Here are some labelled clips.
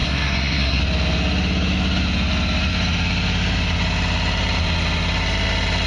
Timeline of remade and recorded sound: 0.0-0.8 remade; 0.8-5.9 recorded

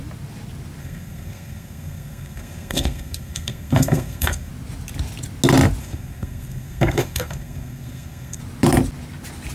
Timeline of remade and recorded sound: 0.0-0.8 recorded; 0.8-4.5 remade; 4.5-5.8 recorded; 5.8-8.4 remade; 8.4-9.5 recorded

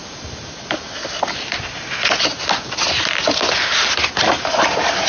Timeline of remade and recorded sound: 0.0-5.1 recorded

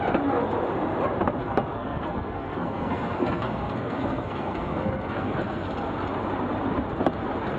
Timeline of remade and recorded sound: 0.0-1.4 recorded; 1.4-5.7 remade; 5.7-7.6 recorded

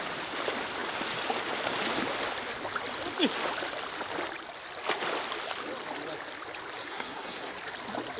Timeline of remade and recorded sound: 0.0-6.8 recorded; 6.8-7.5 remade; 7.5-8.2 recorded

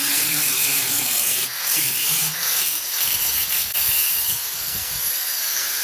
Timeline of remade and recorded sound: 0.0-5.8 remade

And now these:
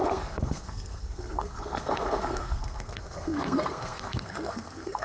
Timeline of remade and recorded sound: 0.0-5.0 remade